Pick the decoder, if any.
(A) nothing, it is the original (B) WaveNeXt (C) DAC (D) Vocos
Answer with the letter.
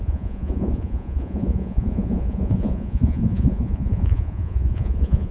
D